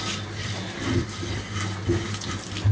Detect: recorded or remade recorded